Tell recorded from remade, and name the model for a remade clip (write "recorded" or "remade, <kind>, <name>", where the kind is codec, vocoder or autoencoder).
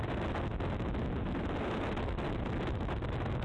recorded